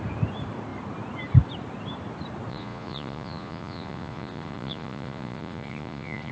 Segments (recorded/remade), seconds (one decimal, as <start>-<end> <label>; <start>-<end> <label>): 0.0-2.5 recorded; 2.5-6.3 remade